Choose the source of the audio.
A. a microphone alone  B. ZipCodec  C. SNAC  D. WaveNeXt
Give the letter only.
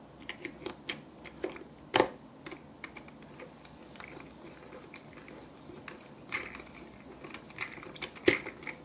A